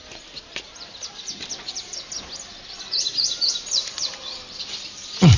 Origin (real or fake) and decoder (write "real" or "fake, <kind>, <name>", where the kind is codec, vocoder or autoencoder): real